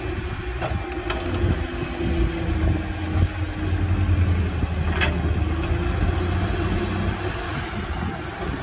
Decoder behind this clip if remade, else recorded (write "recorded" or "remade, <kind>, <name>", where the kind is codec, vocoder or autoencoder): recorded